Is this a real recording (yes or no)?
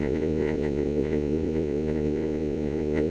no